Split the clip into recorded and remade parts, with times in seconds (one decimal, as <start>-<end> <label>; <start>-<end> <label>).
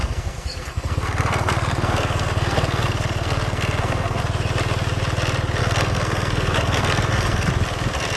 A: 0.0-4.2 remade; 4.2-5.6 recorded; 5.6-7.5 remade; 7.5-8.2 recorded